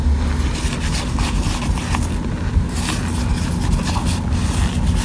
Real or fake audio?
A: real